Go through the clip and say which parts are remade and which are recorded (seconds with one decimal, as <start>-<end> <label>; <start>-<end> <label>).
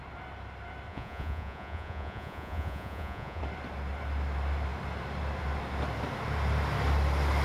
0.0-0.9 recorded; 0.9-3.4 remade; 3.4-7.4 recorded